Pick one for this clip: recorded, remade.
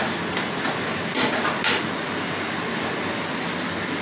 recorded